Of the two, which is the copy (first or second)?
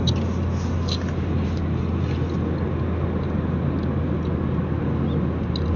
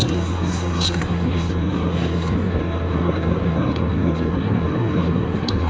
second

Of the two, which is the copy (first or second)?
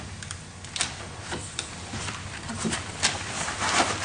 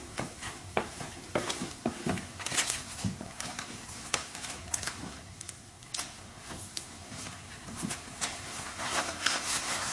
second